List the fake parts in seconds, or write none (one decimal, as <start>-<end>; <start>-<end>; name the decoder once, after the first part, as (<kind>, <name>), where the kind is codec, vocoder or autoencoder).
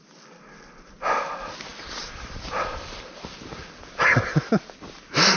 1.7-3.1 (vocoder, BigVGAN v2)